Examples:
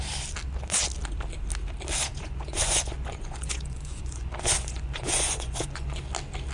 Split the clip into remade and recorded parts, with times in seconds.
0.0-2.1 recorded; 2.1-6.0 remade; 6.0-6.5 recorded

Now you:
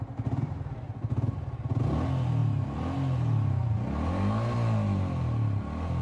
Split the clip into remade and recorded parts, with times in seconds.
0.0-6.0 recorded

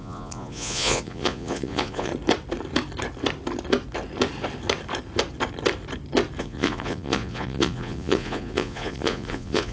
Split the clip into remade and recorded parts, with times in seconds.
0.0-2.1 remade; 2.1-6.4 recorded; 6.4-9.7 remade